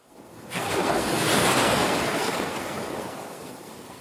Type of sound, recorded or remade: remade